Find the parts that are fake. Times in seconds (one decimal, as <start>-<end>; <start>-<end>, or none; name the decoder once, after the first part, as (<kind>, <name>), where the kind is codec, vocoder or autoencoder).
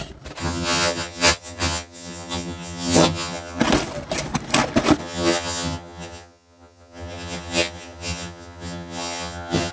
0.4-3.6 (vocoder, HiFi-GAN); 5.0-9.7